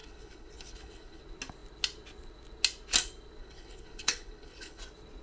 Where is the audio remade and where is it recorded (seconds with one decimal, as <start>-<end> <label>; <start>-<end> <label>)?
0.0-1.2 remade; 1.2-3.4 recorded; 3.4-4.8 remade; 4.8-5.2 recorded